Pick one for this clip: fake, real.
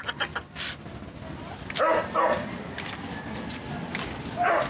real